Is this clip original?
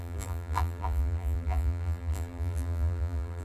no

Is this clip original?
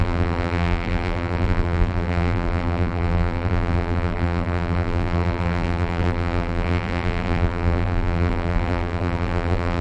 no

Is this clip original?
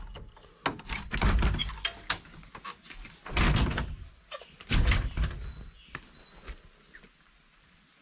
yes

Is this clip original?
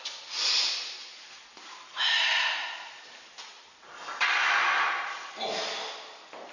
yes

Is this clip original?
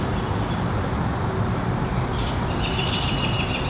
yes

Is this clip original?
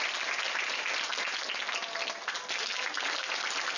yes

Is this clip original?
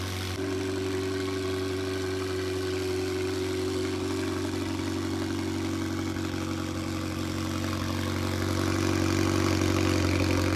yes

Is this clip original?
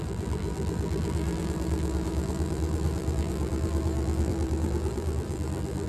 no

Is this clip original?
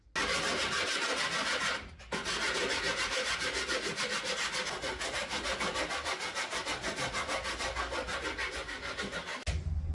yes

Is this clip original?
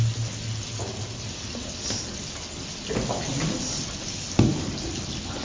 yes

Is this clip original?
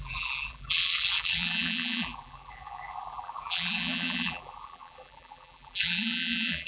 no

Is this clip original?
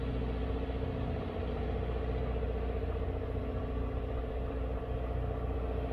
yes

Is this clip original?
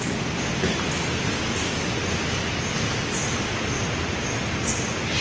yes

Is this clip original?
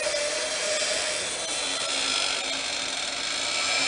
yes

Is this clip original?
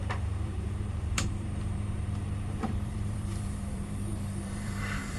no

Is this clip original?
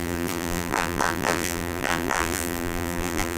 no